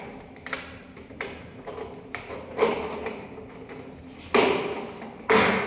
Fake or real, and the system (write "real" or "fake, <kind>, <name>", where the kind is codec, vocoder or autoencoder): real